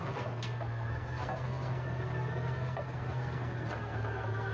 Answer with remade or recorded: remade